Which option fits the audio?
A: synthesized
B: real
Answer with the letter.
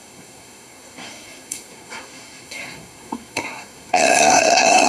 A